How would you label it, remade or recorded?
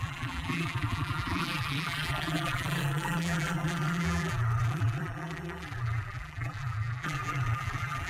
remade